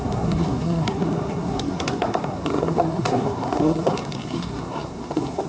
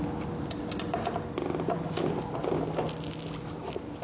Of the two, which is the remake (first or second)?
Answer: first